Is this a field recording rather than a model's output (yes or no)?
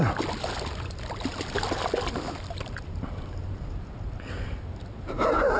yes